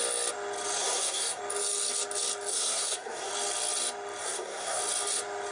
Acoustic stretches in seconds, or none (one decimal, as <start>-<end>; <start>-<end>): 0.0-0.8; 1.4-2.5; 3.3-4.2; 4.8-5.5